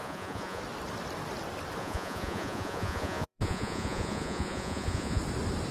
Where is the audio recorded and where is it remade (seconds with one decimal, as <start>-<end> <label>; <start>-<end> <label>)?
0.0-0.6 remade; 0.6-1.8 recorded; 1.8-5.2 remade; 5.2-5.7 recorded